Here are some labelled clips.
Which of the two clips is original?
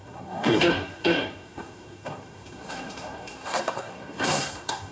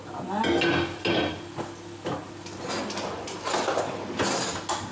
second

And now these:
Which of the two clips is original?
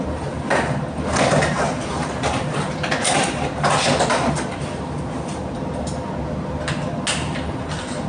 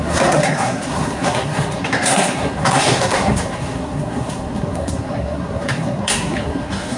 first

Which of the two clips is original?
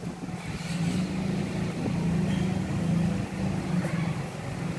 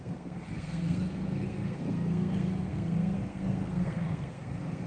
first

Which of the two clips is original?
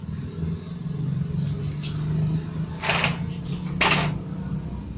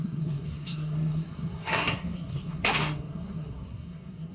first